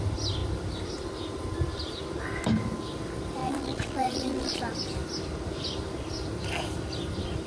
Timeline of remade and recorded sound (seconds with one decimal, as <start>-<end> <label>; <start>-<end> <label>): 0.0-3.4 recorded; 3.4-4.6 remade; 4.6-7.5 recorded